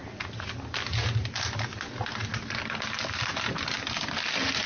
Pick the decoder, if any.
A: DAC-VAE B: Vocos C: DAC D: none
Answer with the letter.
D